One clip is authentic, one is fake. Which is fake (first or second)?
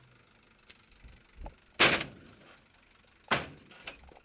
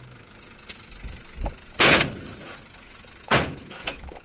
second